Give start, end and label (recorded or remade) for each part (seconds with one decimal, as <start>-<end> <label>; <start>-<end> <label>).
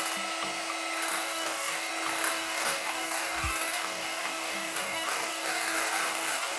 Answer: 0.0-1.1 recorded; 1.1-1.9 remade; 1.9-2.3 recorded; 2.3-6.6 remade